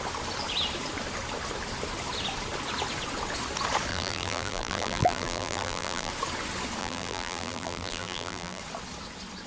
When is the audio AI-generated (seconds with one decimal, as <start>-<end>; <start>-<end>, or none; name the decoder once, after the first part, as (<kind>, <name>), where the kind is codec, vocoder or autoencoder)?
3.9-6.1 (vocoder, BigVGAN v2); 6.8-8.6